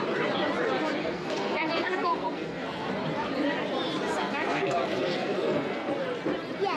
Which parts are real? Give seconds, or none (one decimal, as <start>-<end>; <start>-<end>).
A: 0.0-1.0; 2.9-4.2; 5.9-6.8